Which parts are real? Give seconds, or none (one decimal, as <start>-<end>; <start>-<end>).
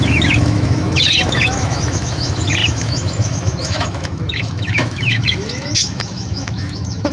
none